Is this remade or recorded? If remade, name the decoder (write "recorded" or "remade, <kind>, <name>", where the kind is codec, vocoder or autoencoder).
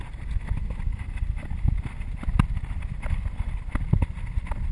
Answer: recorded